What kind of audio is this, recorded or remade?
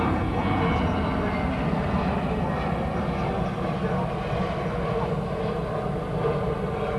recorded